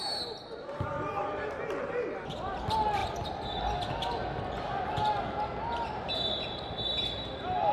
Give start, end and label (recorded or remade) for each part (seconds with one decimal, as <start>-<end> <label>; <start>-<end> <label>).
0.0-7.7 recorded